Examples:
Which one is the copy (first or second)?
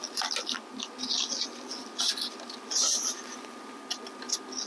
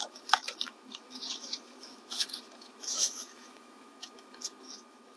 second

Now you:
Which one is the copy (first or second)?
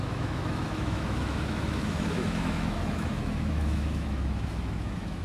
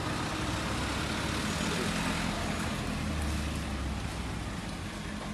first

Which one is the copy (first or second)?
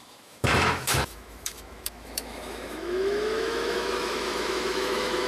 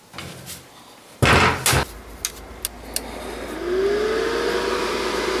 first